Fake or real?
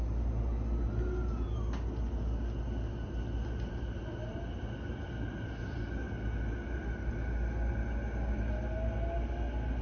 real